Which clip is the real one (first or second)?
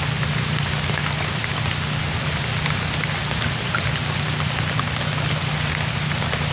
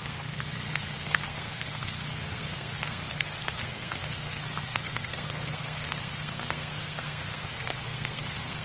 first